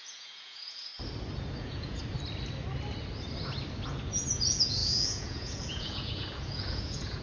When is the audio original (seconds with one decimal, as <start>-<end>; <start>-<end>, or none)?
0.9-1.6; 2.0-4.3